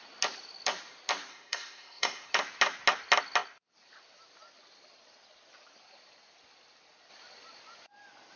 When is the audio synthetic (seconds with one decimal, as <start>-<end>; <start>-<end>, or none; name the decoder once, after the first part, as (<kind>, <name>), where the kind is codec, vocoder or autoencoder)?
1.3-2.3 (codec, SNAC)